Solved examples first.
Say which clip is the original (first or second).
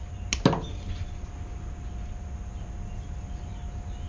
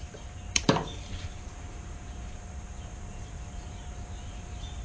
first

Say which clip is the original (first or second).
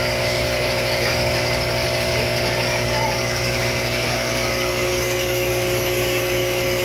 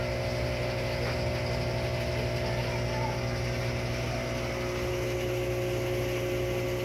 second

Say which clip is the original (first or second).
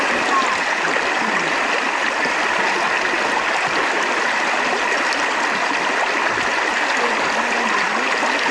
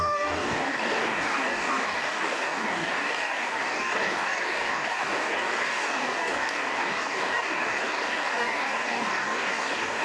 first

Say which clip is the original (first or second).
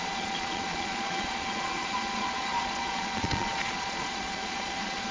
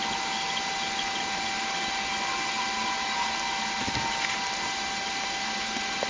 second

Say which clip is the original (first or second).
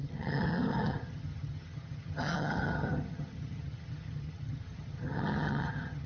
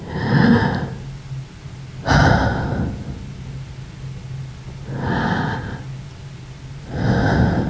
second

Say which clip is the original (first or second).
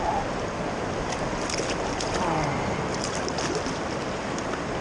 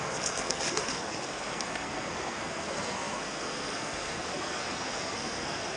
first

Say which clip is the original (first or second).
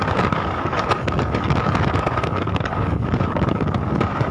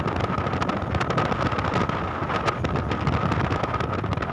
second